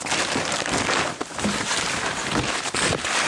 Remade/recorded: recorded